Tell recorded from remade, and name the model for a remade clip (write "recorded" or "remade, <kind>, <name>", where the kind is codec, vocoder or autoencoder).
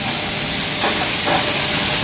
recorded